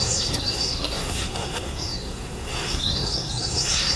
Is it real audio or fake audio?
fake